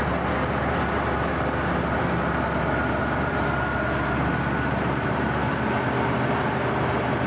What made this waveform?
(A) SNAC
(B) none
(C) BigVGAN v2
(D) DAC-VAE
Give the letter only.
B